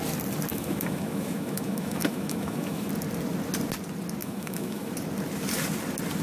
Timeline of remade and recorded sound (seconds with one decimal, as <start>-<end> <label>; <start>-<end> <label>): 0.0-0.5 recorded; 0.5-2.9 remade; 2.9-4.2 recorded; 4.2-4.9 remade; 4.9-6.2 recorded